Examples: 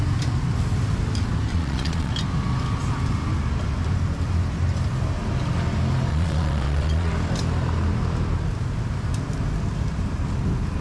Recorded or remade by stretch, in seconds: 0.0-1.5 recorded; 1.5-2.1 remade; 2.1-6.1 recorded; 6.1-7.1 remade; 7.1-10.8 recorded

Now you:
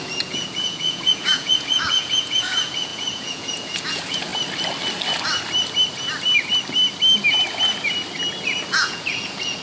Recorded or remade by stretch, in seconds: 0.0-4.3 remade; 4.3-8.7 recorded; 8.7-9.6 remade

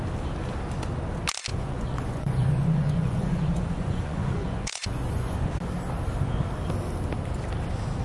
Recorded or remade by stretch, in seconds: 0.0-1.5 recorded; 1.5-5.5 remade; 5.5-8.0 recorded

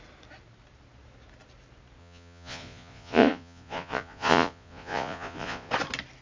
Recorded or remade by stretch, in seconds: 0.0-2.0 recorded; 2.0-5.7 remade; 5.7-6.2 recorded

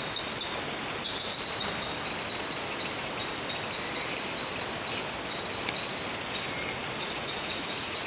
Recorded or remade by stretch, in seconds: 0.0-7.0 recorded; 7.0-8.1 remade